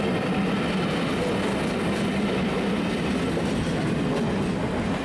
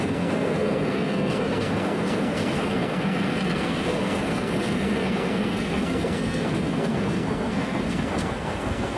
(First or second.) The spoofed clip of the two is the second